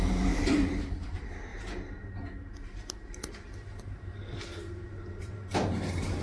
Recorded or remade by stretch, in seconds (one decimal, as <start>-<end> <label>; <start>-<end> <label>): 0.0-1.5 remade; 1.5-4.6 recorded; 4.6-6.2 remade